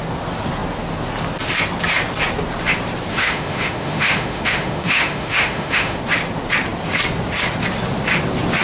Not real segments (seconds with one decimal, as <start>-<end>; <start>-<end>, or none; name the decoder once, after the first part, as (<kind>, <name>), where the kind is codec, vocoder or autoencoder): 3.1-6.0 (autoencoder, DAC-VAE)